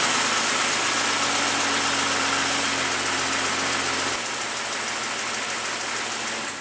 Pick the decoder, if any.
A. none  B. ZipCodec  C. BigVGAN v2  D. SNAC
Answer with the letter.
A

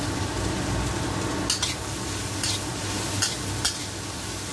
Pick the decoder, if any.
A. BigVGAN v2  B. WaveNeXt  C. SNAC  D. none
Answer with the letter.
D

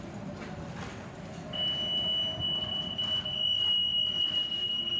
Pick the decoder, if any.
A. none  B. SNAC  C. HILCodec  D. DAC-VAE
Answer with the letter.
A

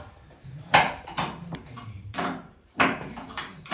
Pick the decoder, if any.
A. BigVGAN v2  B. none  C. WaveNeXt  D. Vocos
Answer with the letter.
A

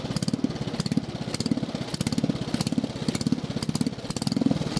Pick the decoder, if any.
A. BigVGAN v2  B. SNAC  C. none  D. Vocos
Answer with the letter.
C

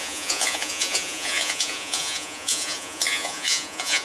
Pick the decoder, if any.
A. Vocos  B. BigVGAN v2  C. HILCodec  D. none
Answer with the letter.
A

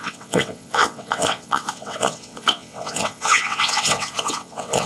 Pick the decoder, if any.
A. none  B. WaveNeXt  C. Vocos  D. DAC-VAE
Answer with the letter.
B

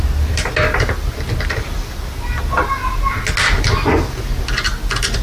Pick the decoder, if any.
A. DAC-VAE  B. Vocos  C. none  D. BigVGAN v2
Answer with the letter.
C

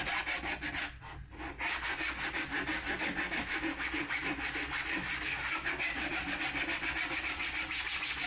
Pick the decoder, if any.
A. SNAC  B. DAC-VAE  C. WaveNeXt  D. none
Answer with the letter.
D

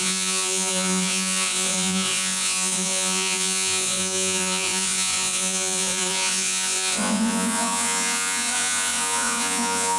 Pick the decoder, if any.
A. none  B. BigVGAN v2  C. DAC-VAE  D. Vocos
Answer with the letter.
D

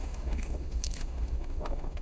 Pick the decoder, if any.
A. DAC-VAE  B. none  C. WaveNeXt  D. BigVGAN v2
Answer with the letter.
A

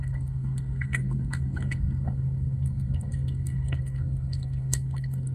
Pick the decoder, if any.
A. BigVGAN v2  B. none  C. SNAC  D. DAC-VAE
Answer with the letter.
C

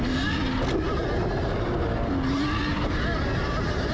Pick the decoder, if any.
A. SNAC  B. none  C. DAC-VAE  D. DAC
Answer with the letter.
B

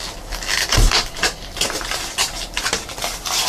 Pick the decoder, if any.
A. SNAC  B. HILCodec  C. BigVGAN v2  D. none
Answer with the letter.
D